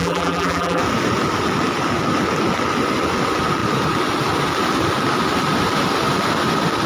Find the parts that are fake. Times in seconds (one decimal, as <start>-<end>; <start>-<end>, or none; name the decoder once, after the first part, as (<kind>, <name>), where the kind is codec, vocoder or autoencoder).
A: 0.0-0.8 (vocoder, BigVGAN v2)